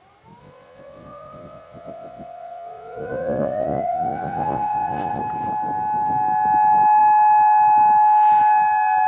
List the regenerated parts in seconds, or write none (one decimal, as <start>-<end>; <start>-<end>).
0.4-5.2